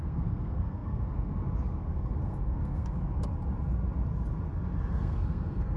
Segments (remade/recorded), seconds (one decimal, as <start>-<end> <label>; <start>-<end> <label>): 0.0-3.3 remade; 3.3-4.9 recorded; 4.9-5.8 remade